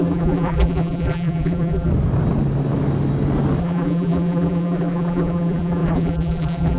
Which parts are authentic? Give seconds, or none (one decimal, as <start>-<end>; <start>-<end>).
1.9-3.6